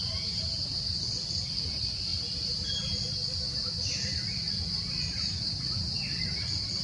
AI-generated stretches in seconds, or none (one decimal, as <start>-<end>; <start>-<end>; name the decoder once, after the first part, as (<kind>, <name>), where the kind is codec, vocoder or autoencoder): none